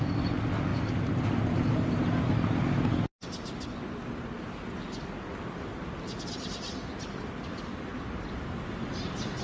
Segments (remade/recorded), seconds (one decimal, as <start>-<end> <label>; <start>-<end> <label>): 0.0-0.7 recorded; 0.7-2.3 remade; 2.3-5.7 recorded; 5.7-7.5 remade; 7.5-7.9 recorded; 7.9-8.9 remade; 8.9-9.4 recorded